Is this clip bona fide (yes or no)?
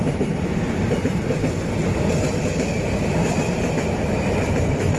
no